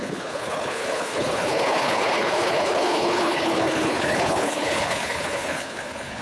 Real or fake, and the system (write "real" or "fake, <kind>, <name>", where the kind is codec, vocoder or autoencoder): fake, codec, HILCodec